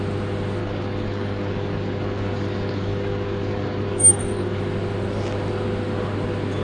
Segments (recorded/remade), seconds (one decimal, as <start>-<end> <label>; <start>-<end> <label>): 0.0-0.6 recorded; 0.6-4.6 remade; 4.6-6.6 recorded